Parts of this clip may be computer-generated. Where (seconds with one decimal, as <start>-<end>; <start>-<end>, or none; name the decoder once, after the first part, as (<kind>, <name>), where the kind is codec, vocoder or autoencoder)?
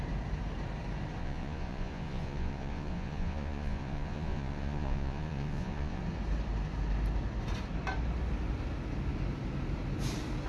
1.2-6.0 (vocoder, Vocos)